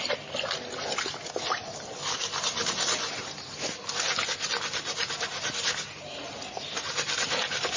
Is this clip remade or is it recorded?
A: recorded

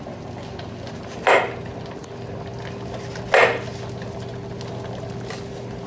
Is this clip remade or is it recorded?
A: recorded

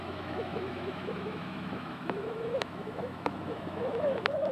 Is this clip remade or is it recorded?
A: remade